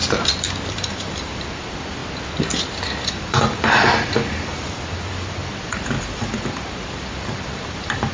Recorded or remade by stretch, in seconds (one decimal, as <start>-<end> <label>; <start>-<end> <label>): 0.0-0.7 recorded; 0.7-2.0 remade; 2.0-3.0 recorded; 3.0-8.1 remade